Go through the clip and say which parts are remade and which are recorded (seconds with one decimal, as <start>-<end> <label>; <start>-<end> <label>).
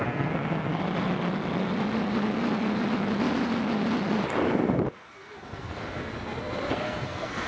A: 0.0-0.7 remade; 0.7-4.9 recorded; 4.9-6.1 remade; 6.1-6.7 recorded; 6.7-7.5 remade